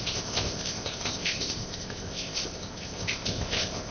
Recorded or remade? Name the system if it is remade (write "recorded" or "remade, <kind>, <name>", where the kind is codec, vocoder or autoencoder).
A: remade, codec, ZipCodec